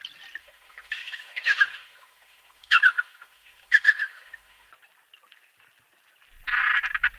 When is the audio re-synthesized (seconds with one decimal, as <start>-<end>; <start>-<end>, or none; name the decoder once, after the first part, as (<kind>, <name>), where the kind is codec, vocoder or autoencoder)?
0.4-4.7 (autoencoder, DAC-VAE)